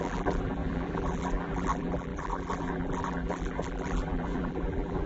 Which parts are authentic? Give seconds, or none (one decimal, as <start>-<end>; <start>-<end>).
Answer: none